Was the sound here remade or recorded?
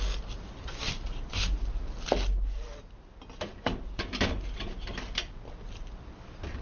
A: recorded